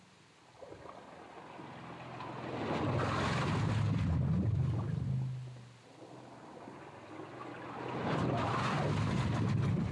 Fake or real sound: real